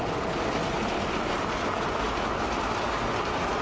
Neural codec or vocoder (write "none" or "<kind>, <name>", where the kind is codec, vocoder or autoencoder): none